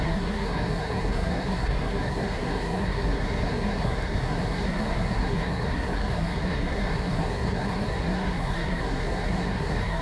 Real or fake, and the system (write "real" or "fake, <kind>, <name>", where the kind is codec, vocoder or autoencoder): fake, codec, SNAC